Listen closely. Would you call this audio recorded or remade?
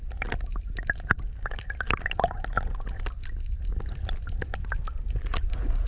recorded